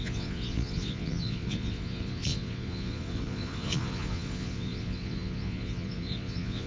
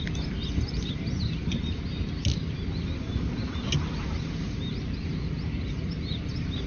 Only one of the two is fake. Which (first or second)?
first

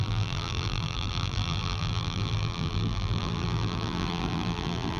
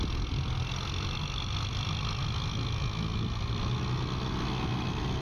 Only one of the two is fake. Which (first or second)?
first